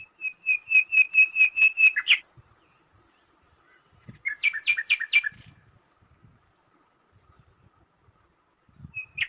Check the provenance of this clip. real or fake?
real